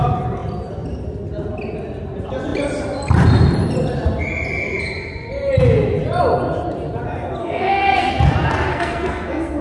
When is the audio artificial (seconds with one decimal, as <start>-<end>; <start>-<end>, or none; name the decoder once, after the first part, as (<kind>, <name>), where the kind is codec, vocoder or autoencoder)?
7.4-8.1 (codec, SNAC); 8.7-9.6